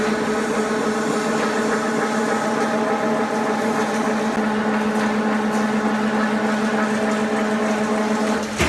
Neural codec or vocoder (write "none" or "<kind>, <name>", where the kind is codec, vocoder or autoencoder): none